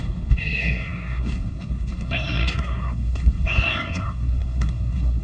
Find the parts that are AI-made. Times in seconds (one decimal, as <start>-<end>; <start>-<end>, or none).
0.0-5.2